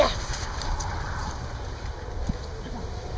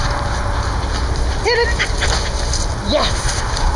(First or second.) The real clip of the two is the second